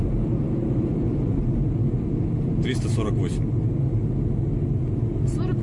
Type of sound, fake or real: real